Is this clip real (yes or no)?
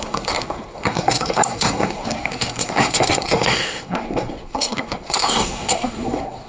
no